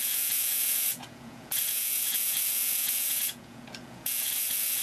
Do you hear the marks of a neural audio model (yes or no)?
yes